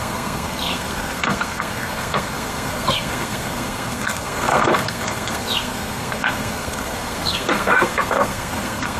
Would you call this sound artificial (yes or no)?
yes